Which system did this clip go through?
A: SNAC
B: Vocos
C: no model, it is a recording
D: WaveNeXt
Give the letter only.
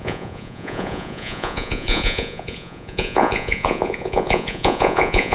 B